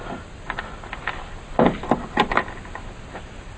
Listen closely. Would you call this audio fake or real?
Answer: real